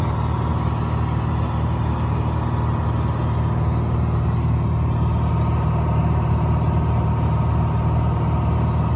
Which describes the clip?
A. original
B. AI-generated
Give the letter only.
A